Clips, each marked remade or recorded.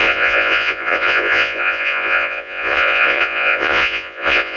remade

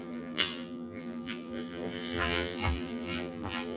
remade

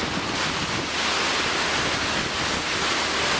recorded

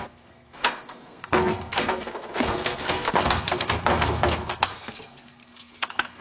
remade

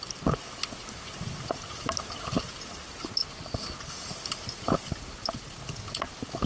recorded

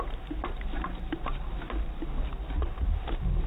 recorded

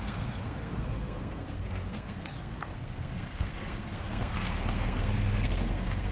remade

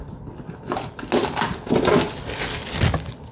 recorded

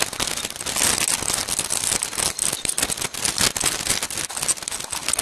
recorded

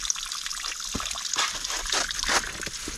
recorded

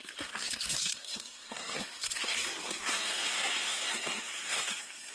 remade